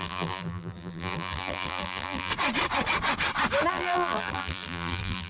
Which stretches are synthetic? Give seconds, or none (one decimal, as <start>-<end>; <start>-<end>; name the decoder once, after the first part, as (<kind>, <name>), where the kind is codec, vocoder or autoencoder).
0.0-2.3 (vocoder, BigVGAN v2); 3.7-5.3